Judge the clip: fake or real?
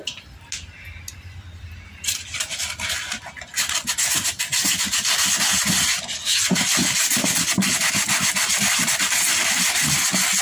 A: real